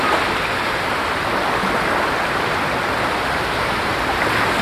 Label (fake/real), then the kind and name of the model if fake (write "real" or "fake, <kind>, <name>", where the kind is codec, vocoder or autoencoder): real